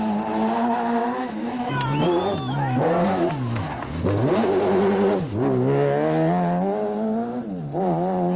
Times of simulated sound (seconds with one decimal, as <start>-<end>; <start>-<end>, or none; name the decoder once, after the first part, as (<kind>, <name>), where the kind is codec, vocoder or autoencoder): 1.0-1.7 (autoencoder, DAC-VAE)